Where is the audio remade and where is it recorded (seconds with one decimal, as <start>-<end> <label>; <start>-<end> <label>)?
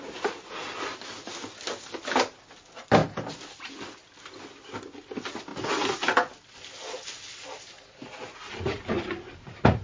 0.0-9.8 recorded